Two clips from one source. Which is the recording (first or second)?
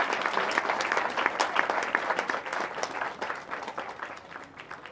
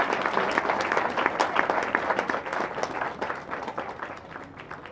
second